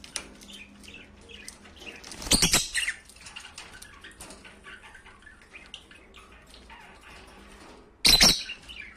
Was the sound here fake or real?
real